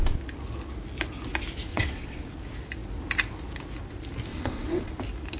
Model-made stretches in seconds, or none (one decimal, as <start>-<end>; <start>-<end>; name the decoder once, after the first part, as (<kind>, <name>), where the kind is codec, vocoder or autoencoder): 1.7-2.2 (vocoder, WaveNeXt); 4.3-4.9